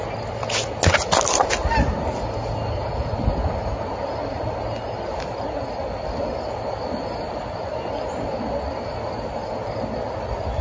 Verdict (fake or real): real